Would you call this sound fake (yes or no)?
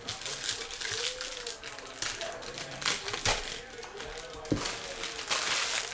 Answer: no